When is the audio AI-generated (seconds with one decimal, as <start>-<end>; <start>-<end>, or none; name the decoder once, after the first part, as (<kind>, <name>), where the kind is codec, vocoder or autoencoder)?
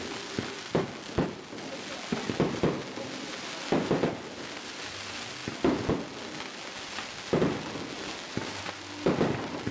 none